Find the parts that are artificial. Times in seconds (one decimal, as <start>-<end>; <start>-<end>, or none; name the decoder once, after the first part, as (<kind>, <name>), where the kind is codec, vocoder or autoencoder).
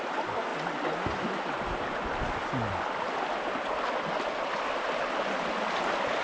none